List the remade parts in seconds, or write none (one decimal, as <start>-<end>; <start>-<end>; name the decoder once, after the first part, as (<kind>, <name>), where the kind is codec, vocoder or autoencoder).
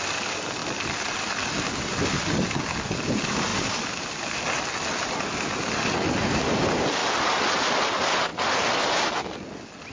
none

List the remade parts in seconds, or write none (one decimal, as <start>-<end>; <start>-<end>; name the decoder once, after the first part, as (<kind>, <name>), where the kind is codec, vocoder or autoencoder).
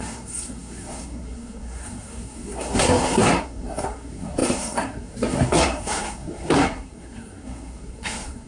0.0-8.5 (codec, SNAC)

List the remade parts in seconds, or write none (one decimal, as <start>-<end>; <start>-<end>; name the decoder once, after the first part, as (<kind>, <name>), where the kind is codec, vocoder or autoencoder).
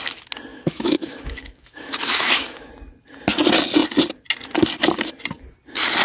0.5-2.7 (autoencoder, DAC-VAE)